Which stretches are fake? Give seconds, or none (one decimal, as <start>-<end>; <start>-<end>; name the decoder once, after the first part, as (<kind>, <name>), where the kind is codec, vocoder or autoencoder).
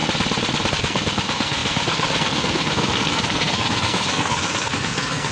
0.7-5.3 (codec, SNAC)